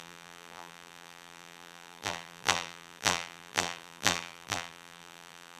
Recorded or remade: remade